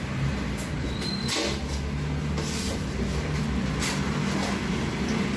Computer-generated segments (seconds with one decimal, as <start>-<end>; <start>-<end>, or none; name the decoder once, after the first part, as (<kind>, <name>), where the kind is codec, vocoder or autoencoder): none